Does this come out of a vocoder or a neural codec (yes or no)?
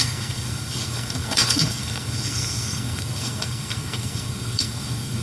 yes